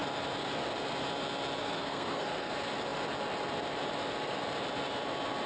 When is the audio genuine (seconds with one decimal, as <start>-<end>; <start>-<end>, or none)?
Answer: 0.0-1.6; 2.5-5.5